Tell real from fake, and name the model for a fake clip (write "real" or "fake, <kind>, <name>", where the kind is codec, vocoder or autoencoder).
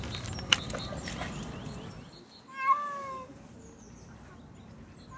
real